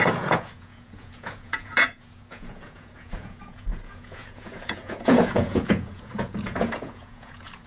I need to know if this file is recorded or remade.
remade